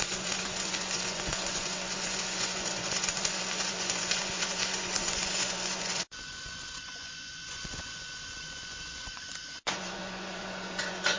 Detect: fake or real fake